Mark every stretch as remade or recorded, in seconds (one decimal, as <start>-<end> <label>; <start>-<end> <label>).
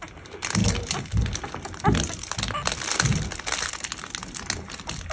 0.0-5.1 recorded